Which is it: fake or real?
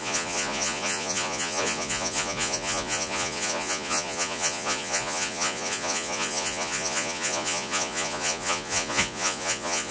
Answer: fake